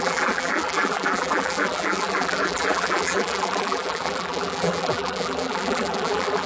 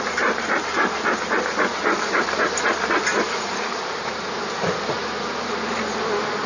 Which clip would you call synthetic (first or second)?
first